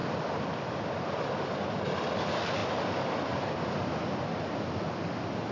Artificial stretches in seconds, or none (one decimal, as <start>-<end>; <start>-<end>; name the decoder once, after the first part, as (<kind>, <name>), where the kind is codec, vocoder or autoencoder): 0.0-1.3 (vocoder, BigVGAN v2)